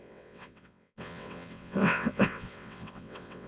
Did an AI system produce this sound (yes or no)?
yes